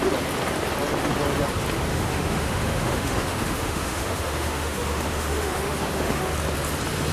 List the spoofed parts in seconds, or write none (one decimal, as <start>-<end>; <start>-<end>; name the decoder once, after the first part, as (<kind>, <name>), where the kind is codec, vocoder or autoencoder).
1.9-6.2 (autoencoder, DAC-VAE)